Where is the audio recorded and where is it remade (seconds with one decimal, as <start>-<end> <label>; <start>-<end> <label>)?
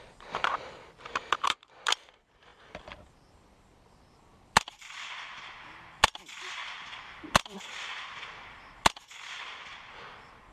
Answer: 0.0-10.5 remade